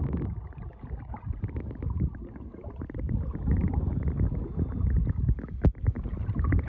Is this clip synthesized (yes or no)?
no